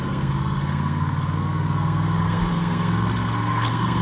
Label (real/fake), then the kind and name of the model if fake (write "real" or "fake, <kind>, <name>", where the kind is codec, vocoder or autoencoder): fake, codec, SNAC